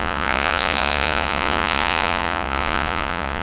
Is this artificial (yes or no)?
yes